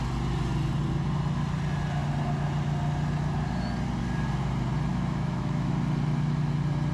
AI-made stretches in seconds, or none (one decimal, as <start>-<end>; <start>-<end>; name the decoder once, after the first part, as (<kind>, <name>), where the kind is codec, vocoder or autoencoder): 4.9-5.7 (autoencoder, DAC-VAE)